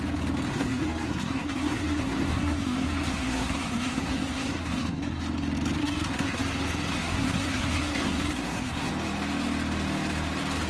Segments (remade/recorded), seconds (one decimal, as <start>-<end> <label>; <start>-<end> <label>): 0.0-0.5 recorded; 0.5-5.2 remade; 5.2-5.8 recorded; 5.8-6.4 remade; 6.4-6.9 recorded; 6.9-8.9 remade; 8.9-10.7 recorded